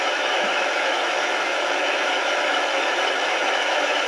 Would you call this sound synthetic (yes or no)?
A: yes